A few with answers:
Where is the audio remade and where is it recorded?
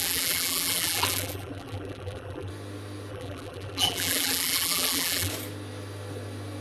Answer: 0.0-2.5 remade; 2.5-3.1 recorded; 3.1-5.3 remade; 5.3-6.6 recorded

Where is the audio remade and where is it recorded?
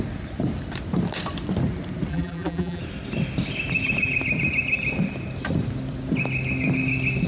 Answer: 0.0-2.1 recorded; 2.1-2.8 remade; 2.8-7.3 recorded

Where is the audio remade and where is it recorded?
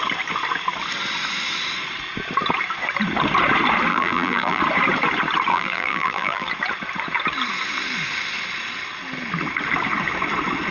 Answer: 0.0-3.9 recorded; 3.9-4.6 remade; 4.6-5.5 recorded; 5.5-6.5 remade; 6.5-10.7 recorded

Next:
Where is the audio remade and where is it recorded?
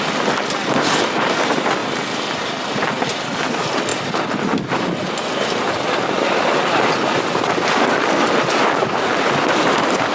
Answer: 0.0-10.1 recorded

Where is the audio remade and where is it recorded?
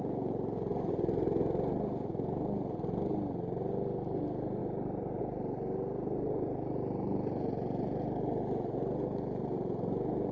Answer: 0.0-10.3 recorded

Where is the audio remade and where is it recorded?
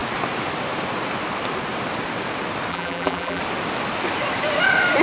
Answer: 0.0-2.7 recorded; 2.7-3.4 remade; 3.4-5.0 recorded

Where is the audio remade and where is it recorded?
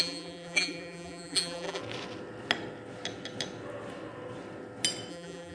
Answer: 0.0-1.8 remade; 1.8-5.1 recorded; 5.1-5.5 remade